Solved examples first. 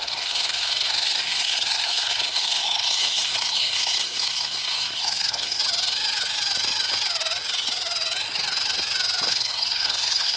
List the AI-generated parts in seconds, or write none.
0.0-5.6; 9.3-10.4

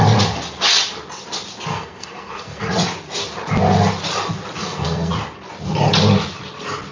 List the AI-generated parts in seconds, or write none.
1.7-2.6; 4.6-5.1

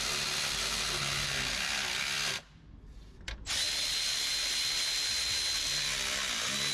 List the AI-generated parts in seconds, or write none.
none

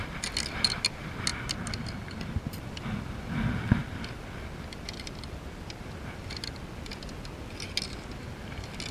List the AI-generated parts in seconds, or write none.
none